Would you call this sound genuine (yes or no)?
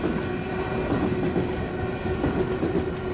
yes